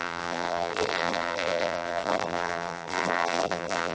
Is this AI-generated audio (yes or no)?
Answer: yes